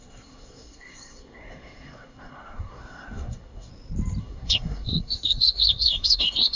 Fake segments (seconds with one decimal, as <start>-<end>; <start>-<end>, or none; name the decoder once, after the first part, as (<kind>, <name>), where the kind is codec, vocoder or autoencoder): 0.0-3.7 (codec, SNAC); 4.2-6.6